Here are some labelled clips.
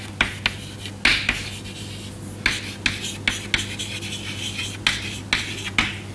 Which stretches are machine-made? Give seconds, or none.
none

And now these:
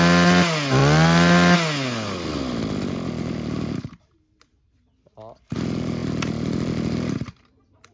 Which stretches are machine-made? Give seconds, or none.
none

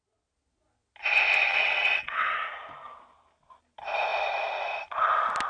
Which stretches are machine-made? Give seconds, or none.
1.5-2.5 (vocoder, WaveNeXt)

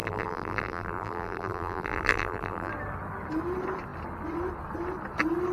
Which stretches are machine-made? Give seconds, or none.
0.0-2.7 (vocoder, BigVGAN v2)

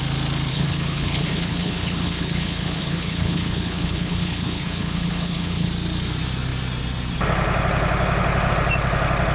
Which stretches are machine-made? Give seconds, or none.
0.5-5.7 (codec, HILCodec)